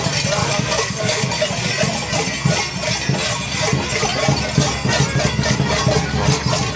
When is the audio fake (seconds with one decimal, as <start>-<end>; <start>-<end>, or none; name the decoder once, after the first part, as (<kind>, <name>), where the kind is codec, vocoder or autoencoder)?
0.4-1.3 (codec, DAC)